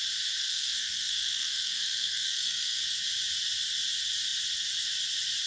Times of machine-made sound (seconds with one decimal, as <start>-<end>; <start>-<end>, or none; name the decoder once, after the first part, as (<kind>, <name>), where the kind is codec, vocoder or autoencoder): 0.4-2.8 (codec, SNAC)